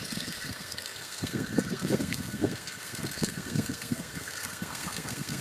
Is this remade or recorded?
remade